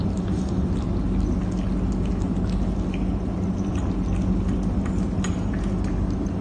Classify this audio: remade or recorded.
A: recorded